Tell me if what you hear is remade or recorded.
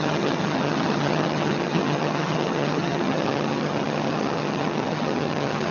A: remade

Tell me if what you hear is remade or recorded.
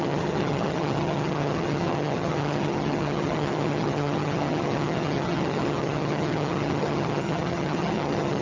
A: remade